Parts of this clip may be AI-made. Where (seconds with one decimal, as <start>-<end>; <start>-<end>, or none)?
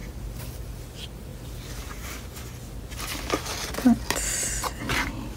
none